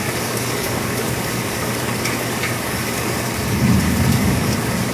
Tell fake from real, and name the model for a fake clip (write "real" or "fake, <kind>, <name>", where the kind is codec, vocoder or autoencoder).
fake, codec, DAC